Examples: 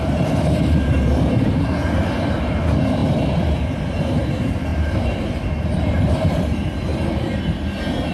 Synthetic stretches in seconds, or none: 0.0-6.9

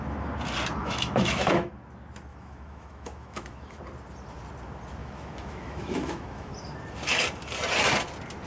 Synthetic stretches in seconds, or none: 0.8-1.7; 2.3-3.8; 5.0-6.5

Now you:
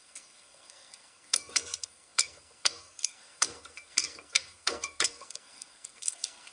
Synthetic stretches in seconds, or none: 0.0-6.5